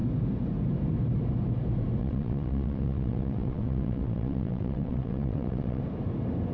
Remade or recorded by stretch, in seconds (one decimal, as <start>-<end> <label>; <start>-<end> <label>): 0.0-2.0 recorded; 2.0-5.8 remade; 5.8-6.5 recorded